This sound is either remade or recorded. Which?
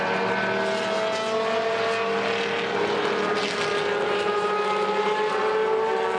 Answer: recorded